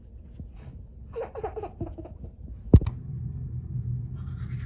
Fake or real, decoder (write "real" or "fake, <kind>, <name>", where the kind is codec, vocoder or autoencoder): real